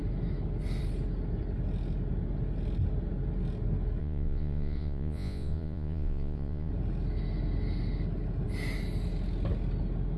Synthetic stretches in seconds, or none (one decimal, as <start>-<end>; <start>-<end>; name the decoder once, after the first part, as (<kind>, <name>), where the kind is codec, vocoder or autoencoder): 4.0-6.7 (vocoder, Vocos)